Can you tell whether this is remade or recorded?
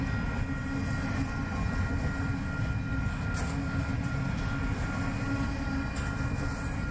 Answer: recorded